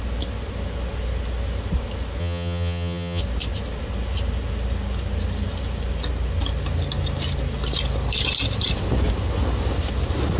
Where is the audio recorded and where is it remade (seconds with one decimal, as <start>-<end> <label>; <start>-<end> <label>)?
0.0-2.2 recorded; 2.2-3.2 remade; 3.2-10.4 recorded